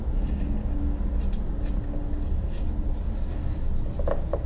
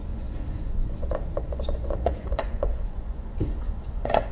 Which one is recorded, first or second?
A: first